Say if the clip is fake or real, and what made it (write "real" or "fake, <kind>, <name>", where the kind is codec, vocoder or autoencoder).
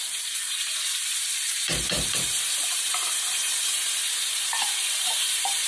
fake, vocoder, BigVGAN v2